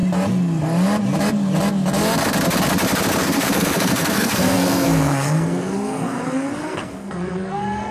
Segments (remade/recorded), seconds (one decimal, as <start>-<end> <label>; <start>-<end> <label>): 0.0-3.2 recorded; 3.2-7.9 remade

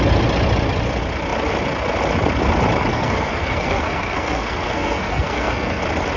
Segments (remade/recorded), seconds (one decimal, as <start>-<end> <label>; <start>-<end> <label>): 0.0-2.9 recorded; 2.9-5.8 remade; 5.8-6.2 recorded

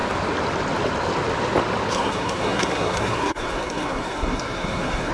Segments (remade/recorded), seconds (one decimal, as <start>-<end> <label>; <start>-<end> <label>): 0.0-1.9 recorded; 1.9-5.1 remade